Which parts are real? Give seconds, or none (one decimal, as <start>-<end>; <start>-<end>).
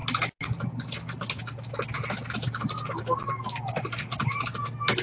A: 0.0-5.0